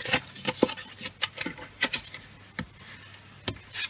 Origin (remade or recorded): recorded